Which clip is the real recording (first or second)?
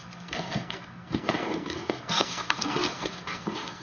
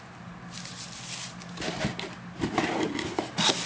second